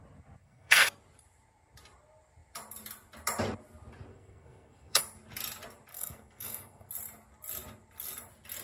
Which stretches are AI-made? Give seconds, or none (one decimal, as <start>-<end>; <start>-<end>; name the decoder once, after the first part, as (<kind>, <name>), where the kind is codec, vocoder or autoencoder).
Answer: 0.4-0.9 (codec, SNAC); 4.1-5.0; 5.9-6.9